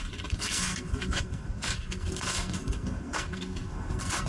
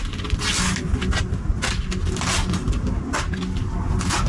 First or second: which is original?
second